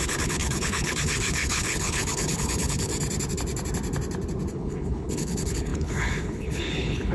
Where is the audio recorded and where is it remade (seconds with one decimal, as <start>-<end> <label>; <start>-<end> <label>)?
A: 0.0-2.9 remade; 2.9-4.5 recorded; 4.5-7.1 remade